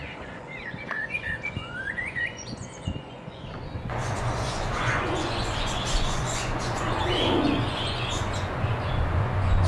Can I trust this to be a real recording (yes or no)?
no